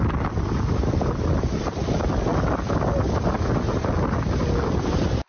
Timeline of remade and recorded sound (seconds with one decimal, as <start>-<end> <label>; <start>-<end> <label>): 0.0-5.3 recorded